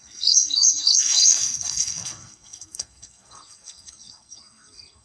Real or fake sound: fake